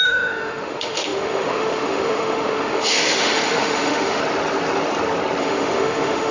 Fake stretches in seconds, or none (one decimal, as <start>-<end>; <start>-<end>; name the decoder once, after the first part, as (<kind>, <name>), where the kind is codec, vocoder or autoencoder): 0.0-4.2 (autoencoder, DAC-VAE); 5.4-6.3